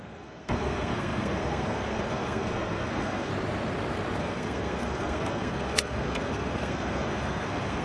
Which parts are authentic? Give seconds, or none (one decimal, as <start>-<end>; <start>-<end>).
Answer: 3.3-4.2